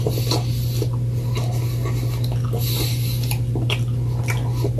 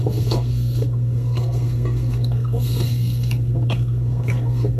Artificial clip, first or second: second